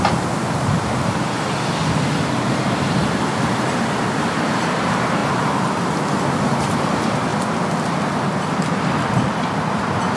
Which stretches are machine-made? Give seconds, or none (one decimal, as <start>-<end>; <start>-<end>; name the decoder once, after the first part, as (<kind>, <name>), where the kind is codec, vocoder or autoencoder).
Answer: 0.0-1.8 (vocoder, BigVGAN v2); 2.3-7.3